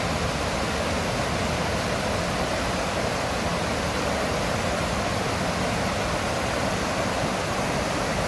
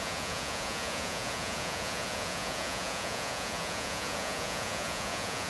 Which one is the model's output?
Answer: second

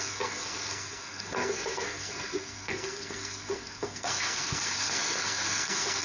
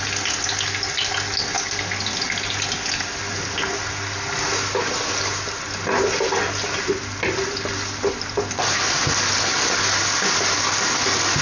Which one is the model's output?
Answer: first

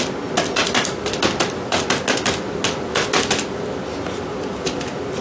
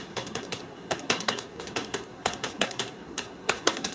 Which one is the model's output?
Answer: second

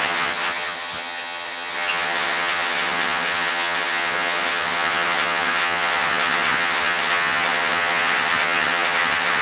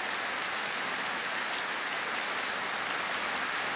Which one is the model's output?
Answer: first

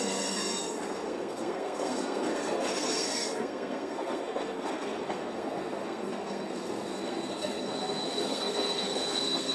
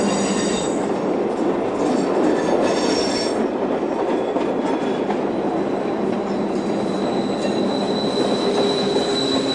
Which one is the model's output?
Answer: first